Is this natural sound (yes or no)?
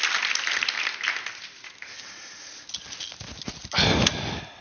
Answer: yes